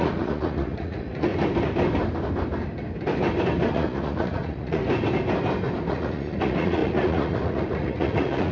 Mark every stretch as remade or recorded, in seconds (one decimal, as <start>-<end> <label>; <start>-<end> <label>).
0.0-1.3 remade; 1.3-3.7 recorded; 3.7-4.8 remade; 4.8-5.9 recorded; 5.9-8.5 remade